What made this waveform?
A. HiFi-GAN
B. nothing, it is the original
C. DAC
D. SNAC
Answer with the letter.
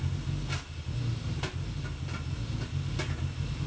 B